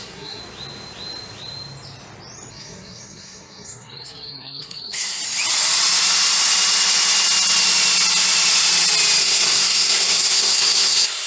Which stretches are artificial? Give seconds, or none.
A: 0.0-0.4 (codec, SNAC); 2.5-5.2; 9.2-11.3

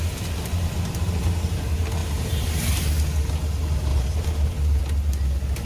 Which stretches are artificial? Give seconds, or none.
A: 2.0-2.8 (vocoder, BigVGAN v2); 3.9-4.8

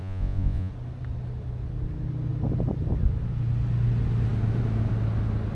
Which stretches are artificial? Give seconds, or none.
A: 0.0-0.7 (vocoder, Vocos)

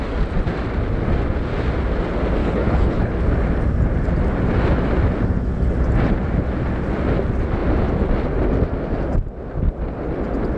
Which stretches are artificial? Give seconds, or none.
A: 2.4-3.2 (codec, HILCodec)

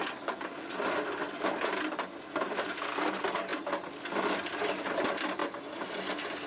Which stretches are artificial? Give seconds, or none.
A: none